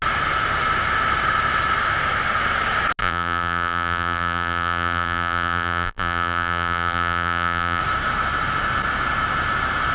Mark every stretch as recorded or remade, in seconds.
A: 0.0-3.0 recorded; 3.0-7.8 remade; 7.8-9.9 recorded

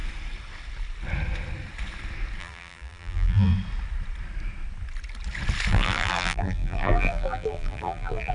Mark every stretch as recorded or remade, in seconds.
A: 0.0-2.4 recorded; 2.4-3.5 remade; 3.5-5.7 recorded; 5.7-8.3 remade

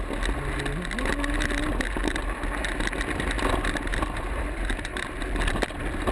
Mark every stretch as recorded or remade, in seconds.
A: 0.0-3.9 recorded; 3.9-5.2 remade; 5.2-6.1 recorded

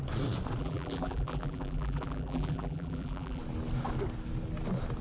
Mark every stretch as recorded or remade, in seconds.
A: 0.0-0.6 recorded; 0.6-3.4 remade; 3.4-5.0 recorded

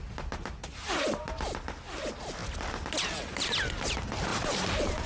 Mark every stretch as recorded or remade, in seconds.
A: 0.0-4.3 recorded; 4.3-5.1 remade

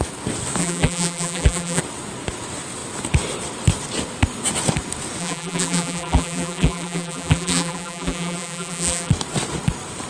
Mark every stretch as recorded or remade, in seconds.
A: 0.0-0.6 recorded; 0.6-1.8 remade; 1.8-5.2 recorded; 5.2-9.1 remade; 9.1-10.1 recorded

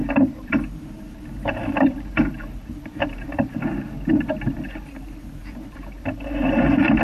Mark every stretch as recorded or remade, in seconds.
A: 0.0-3.5 remade; 3.5-5.4 recorded; 5.4-7.0 remade